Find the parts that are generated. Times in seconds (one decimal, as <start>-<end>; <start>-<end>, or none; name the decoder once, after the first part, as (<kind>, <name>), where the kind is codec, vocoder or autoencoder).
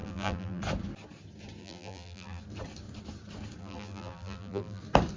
0.0-0.6 (vocoder, BigVGAN v2); 1.6-2.4; 3.6-4.8